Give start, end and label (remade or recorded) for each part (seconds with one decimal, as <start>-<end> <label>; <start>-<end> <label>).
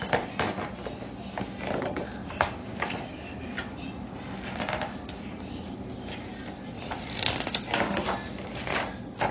0.0-9.3 recorded